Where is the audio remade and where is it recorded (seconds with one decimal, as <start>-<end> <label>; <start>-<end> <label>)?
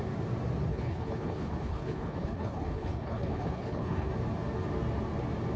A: 0.0-0.7 recorded; 0.7-4.1 remade; 4.1-5.6 recorded